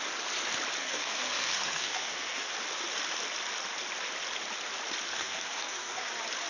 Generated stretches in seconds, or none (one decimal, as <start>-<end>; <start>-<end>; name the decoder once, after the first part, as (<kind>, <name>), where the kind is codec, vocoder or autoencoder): 0.8-2.5 (codec, SNAC); 5.1-6.1

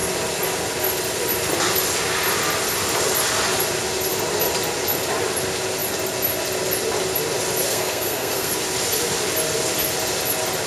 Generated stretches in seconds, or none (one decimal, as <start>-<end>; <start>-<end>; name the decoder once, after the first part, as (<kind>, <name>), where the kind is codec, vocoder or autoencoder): 7.7-8.5 (codec, SNAC)